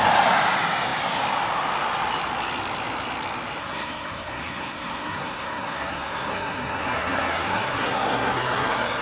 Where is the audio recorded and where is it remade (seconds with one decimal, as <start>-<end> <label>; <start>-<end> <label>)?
0.0-3.6 recorded; 3.6-9.0 remade